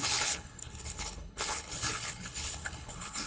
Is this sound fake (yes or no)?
yes